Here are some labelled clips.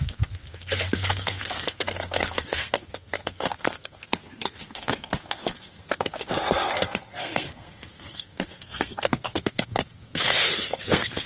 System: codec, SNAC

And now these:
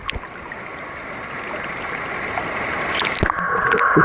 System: none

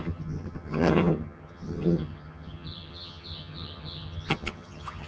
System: vocoder, HiFi-GAN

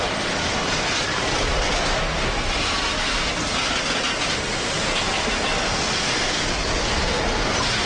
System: none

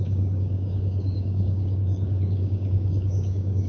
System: codec, DAC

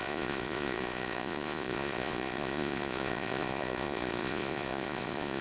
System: vocoder, Vocos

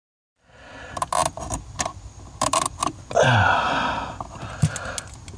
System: none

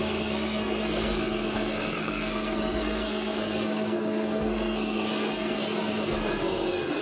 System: codec, SNAC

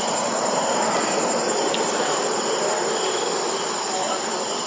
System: none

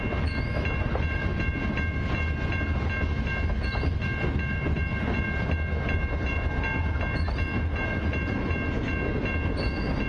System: none